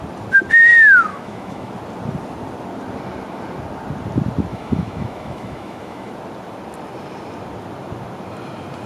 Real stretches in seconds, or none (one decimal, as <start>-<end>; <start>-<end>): 0.0-1.1; 1.7-4.5; 6.1-8.9